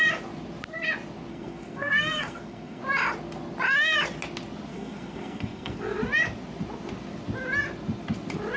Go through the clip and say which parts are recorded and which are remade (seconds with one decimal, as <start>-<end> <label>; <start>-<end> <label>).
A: 0.0-1.3 recorded; 1.3-2.8 remade; 2.8-4.7 recorded; 4.7-6.0 remade; 6.0-8.6 recorded